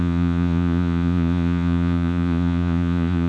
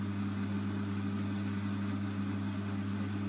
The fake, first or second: first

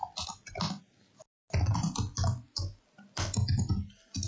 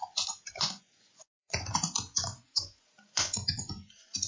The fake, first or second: second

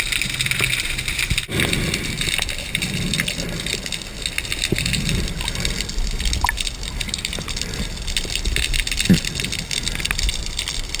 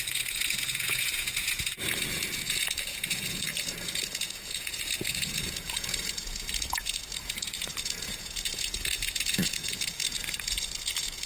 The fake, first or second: second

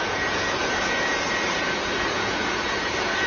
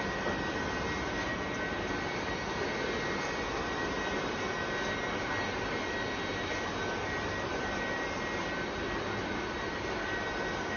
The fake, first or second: first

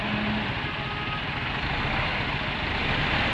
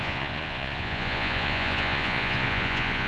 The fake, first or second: second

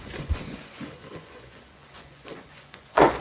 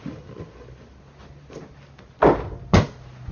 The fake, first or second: first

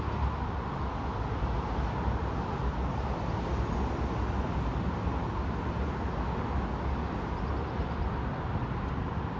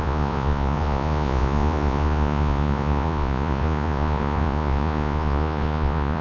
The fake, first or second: second